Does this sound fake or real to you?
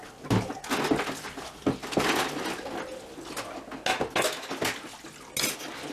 real